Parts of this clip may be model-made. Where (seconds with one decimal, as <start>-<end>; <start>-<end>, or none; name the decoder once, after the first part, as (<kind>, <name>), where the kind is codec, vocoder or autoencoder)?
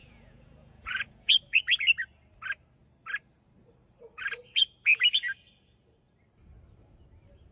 0.0-1.6 (vocoder, Vocos)